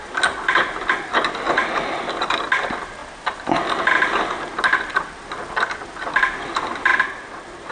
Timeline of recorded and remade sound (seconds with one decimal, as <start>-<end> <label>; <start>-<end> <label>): 0.0-7.7 recorded